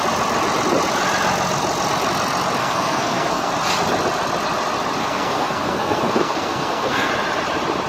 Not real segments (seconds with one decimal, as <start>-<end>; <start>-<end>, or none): 2.6-3.5; 5.0-7.1